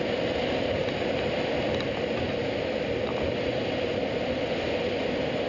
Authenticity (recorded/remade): recorded